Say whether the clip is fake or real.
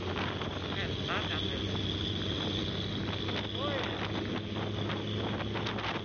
real